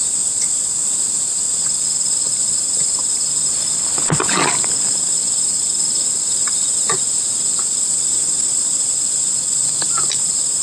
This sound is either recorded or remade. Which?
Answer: remade